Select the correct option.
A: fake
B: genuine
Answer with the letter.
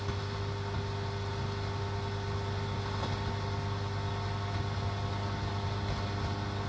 B